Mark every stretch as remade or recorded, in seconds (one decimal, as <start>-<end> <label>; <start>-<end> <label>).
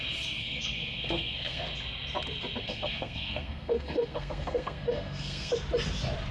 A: 0.0-0.4 recorded; 0.4-1.6 remade; 1.6-2.6 recorded; 2.6-5.5 remade; 5.5-6.3 recorded